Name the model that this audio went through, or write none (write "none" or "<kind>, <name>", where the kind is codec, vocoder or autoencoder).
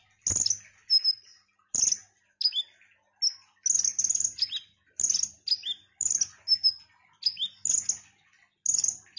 none